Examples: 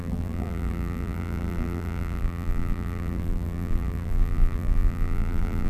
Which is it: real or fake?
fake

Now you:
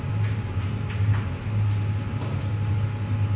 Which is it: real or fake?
real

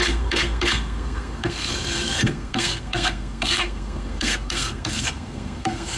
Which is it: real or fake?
fake